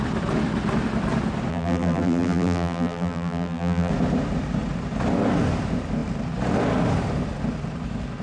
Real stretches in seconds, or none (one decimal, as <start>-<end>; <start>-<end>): 0.0-1.5; 3.9-8.2